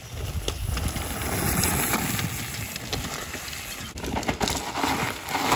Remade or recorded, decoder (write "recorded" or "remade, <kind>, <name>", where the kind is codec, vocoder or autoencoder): recorded